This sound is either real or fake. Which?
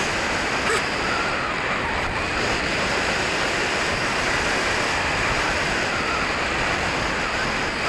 real